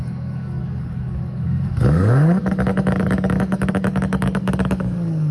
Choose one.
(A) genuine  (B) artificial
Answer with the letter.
B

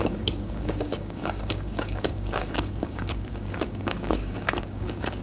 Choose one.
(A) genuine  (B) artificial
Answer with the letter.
B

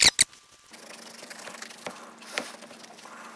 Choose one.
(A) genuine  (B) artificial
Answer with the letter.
A